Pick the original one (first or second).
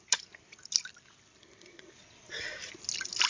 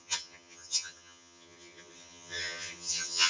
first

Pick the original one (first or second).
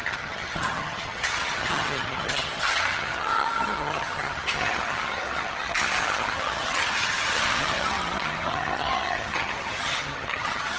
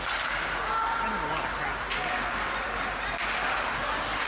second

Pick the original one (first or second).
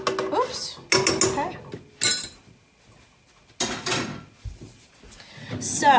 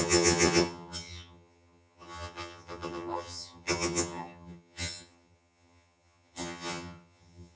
first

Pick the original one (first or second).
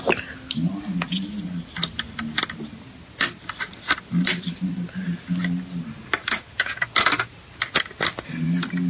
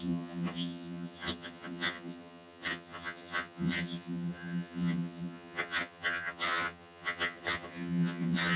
first